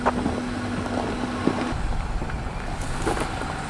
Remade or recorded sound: recorded